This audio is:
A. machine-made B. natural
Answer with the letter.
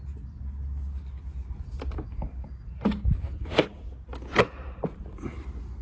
B